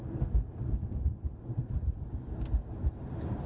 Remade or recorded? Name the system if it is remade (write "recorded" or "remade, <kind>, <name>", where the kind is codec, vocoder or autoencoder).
recorded